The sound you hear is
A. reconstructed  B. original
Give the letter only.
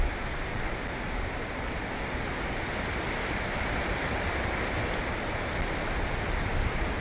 B